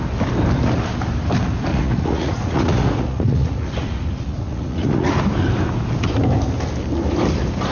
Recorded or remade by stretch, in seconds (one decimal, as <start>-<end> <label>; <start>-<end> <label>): 0.0-1.7 recorded; 1.7-5.2 remade; 5.2-7.7 recorded